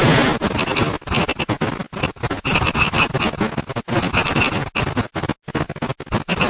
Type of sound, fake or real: real